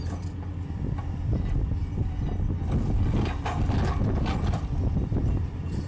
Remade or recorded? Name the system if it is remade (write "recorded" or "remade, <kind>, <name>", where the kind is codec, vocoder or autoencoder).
recorded